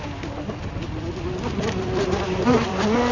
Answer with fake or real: real